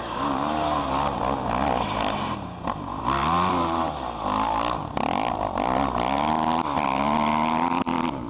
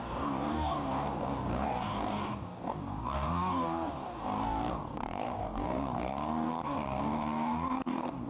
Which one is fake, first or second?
second